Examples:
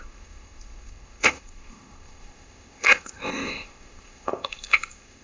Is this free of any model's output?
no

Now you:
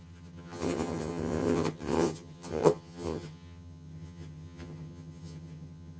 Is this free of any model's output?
no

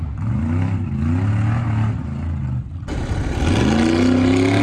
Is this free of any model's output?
yes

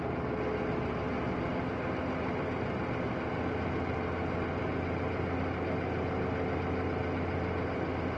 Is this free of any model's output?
yes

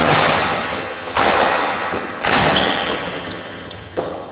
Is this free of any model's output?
no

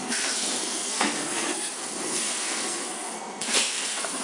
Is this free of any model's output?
no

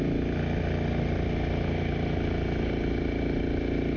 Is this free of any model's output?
yes